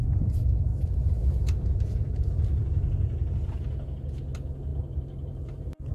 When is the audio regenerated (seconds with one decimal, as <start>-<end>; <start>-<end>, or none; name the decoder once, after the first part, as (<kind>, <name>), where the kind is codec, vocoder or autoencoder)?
4.7-5.9 (vocoder, BigVGAN v2)

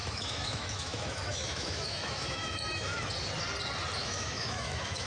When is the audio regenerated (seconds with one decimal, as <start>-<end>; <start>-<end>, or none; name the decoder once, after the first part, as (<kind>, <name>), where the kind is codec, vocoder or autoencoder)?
0.0-3.1 (autoencoder, DAC-VAE); 4.0-5.1

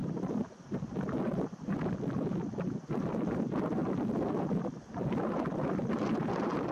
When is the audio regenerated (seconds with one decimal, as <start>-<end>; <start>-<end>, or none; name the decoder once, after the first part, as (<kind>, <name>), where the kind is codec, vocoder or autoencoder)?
0.0-2.7 (vocoder, BigVGAN v2)

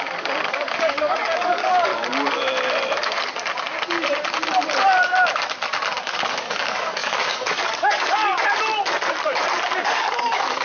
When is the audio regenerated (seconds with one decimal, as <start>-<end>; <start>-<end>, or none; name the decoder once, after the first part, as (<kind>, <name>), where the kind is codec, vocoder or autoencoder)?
0.0-1.9 (codec, DAC); 6.0-8.2; 9.8-10.6

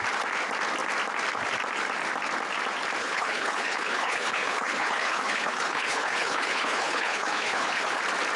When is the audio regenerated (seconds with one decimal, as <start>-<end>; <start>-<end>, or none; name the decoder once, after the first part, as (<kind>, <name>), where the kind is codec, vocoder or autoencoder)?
3.0-8.0 (codec, HILCodec)